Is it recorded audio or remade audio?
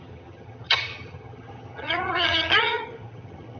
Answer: remade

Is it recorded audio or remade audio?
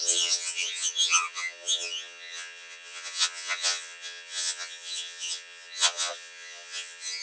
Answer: remade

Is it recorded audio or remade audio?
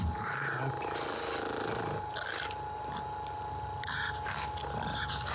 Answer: recorded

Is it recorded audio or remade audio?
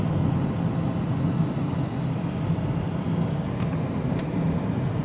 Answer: recorded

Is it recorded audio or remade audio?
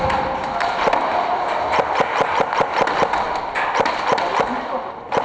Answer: recorded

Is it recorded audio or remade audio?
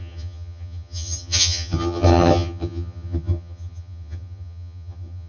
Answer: remade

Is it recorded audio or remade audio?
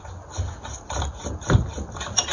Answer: recorded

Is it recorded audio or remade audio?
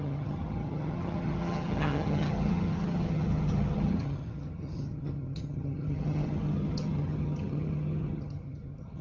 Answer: remade